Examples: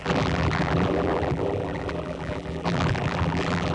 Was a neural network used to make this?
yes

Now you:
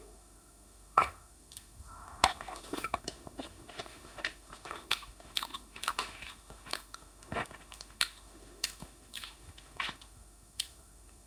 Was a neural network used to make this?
yes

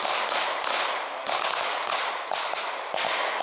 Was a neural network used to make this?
no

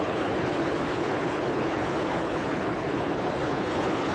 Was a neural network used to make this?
yes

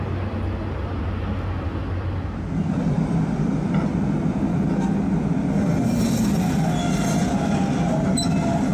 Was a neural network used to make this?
no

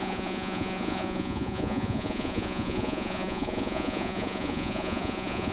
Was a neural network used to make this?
yes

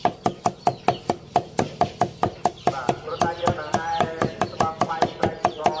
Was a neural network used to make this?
no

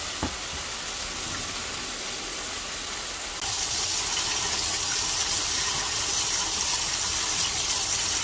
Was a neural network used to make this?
no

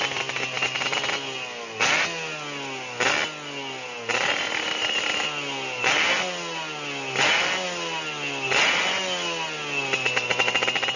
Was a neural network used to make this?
no